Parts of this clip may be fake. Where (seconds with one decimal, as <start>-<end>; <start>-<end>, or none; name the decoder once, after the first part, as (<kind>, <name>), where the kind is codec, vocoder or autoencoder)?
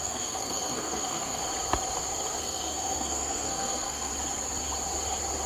0.0-1.4 (codec, SNAC); 2.4-4.1